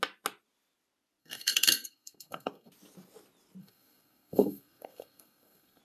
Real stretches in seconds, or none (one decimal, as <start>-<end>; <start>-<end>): 0.0-1.2; 2.7-3.6